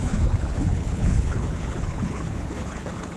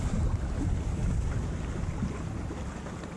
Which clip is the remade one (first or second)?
first